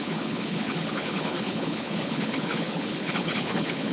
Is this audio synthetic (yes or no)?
yes